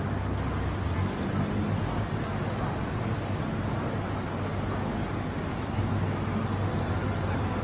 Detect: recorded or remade recorded